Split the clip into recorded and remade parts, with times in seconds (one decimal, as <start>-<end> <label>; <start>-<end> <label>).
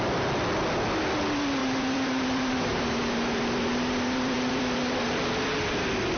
0.0-1.6 recorded; 1.6-5.3 remade; 5.3-6.2 recorded